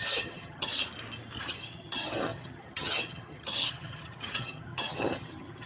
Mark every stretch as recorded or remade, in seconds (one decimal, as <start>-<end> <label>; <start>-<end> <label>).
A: 0.0-0.7 remade; 0.7-1.4 recorded; 1.4-5.7 remade